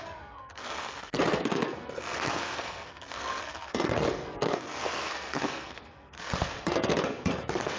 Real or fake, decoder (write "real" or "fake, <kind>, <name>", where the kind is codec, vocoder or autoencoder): fake, codec, SNAC